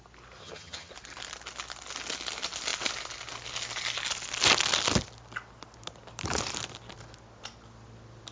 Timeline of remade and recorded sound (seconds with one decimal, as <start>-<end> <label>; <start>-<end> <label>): 0.0-0.4 recorded; 0.4-0.9 remade; 0.9-8.3 recorded